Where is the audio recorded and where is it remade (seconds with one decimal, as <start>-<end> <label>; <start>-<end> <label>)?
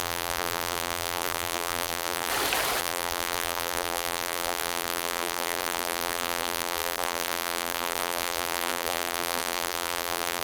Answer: 0.0-2.3 remade; 2.3-2.8 recorded; 2.8-10.4 remade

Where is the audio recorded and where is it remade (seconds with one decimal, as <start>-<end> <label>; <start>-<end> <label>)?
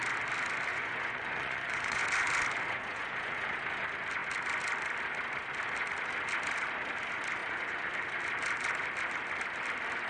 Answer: 0.0-0.7 recorded; 0.7-2.0 remade; 2.0-2.7 recorded; 2.7-3.6 remade; 3.6-7.4 recorded; 7.4-7.9 remade; 7.9-10.1 recorded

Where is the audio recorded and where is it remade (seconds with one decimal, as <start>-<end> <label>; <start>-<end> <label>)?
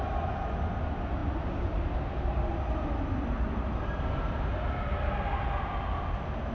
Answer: 0.0-6.5 recorded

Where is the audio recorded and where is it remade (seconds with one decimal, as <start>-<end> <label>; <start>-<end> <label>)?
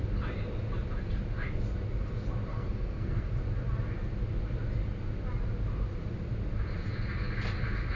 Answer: 0.0-2.5 recorded; 2.5-3.3 remade; 3.3-8.0 recorded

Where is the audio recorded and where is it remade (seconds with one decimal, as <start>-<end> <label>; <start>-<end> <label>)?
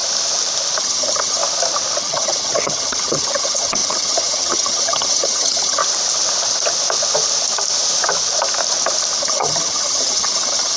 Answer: 0.0-0.8 recorded; 0.8-1.4 remade; 1.4-2.0 recorded; 2.0-5.8 remade; 5.8-9.2 recorded; 9.2-10.8 remade